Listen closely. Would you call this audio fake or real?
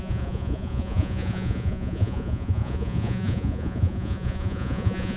fake